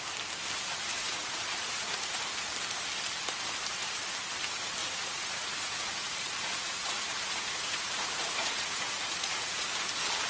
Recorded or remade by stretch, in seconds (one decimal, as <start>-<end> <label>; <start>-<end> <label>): 0.0-0.8 recorded; 0.8-2.3 remade; 2.3-4.8 recorded; 4.8-9.7 remade; 9.7-10.3 recorded